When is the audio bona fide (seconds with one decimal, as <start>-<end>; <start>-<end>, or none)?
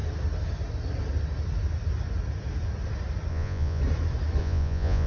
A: 0.0-3.3; 3.8-4.4